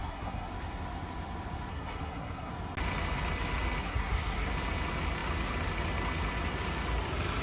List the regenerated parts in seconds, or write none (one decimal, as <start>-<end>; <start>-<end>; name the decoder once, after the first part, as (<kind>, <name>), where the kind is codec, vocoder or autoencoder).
0.0-0.5 (codec, SNAC); 1.7-2.5; 3.8-4.5